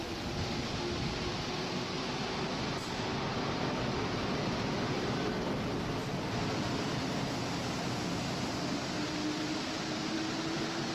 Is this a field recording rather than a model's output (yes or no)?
yes